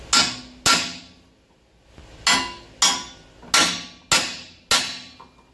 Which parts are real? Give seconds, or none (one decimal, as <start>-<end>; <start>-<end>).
0.0-5.5